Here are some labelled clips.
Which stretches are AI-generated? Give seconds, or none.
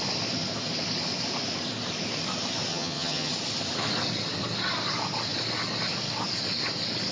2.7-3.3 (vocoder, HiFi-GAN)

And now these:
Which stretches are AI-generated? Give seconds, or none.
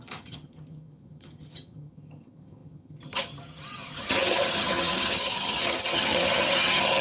0.0-7.0 (vocoder, HiFi-GAN)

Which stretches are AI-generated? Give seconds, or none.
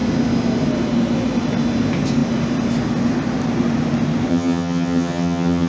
4.3-5.7 (vocoder, HiFi-GAN)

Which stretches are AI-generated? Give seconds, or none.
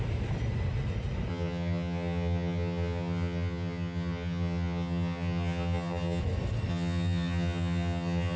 1.3-6.2 (vocoder, HiFi-GAN); 6.7-8.4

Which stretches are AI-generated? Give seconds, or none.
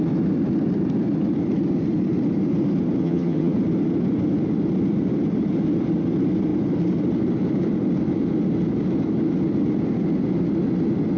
3.0-3.5 (vocoder, HiFi-GAN)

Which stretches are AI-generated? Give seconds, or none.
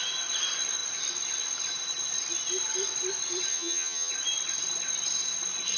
3.5-4.1 (vocoder, HiFi-GAN)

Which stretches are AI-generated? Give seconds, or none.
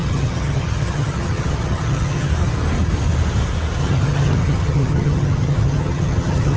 0.0-2.3 (vocoder, HiFi-GAN); 3.8-6.6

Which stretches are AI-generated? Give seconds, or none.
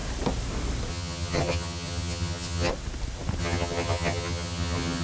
0.9-2.7 (vocoder, HiFi-GAN); 3.4-5.0